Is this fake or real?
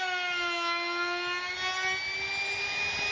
real